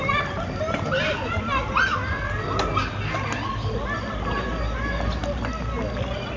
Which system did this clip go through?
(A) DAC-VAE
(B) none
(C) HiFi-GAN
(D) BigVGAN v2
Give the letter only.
B